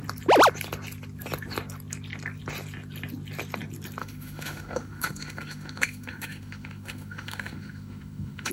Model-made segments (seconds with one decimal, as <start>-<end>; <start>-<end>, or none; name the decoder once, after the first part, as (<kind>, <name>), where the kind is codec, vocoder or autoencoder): 4.0-8.5 (autoencoder, DAC-VAE)